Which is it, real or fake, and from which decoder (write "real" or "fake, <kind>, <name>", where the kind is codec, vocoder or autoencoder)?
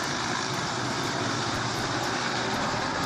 fake, vocoder, BigVGAN v2